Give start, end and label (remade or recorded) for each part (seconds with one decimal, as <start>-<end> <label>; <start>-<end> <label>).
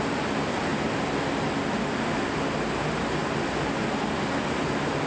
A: 0.0-5.1 recorded